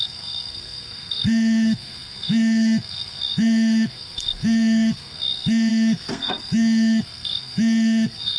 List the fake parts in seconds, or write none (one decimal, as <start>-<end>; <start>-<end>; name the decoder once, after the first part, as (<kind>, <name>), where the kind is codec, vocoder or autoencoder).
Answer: 0.0-8.4 (codec, SNAC)